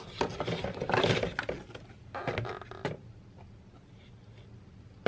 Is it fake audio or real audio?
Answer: real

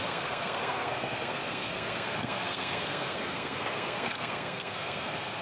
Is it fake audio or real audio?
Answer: fake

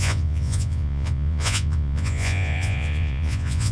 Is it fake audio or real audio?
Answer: fake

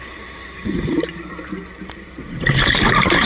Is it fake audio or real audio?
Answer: real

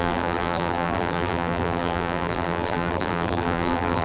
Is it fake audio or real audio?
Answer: fake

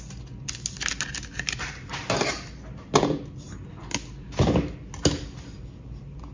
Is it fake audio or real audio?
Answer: real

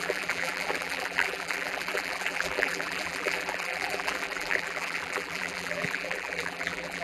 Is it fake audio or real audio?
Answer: fake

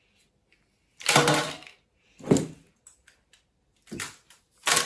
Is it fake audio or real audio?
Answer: real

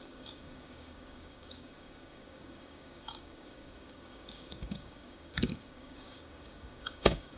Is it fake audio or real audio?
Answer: fake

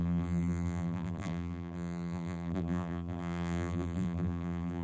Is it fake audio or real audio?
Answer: fake